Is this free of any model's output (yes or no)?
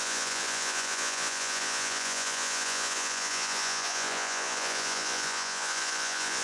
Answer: no